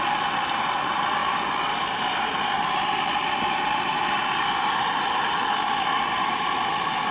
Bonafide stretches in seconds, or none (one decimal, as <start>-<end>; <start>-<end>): 0.0-7.1